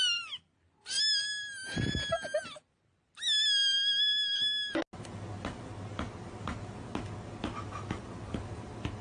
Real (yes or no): yes